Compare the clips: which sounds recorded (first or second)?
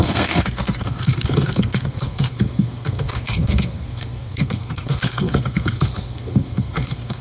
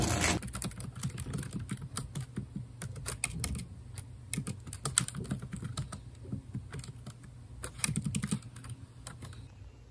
second